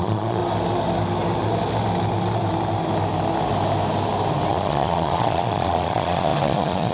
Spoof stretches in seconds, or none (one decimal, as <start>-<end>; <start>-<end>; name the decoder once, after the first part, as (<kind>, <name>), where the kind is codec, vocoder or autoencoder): 0.0-0.4 (vocoder, Vocos); 4.5-6.9